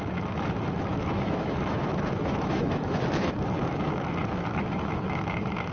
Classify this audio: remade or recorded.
remade